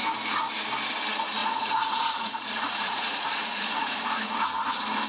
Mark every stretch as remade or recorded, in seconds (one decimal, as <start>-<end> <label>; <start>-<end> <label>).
0.0-1.4 recorded; 1.4-4.5 remade; 4.5-5.1 recorded